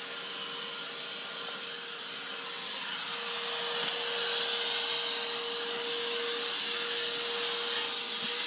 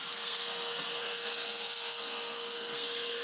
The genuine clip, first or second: first